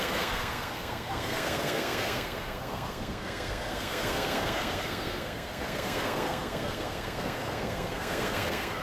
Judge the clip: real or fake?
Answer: fake